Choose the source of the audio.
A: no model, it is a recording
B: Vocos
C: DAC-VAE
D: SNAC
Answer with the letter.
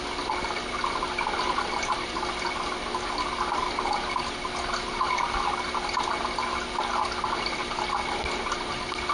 A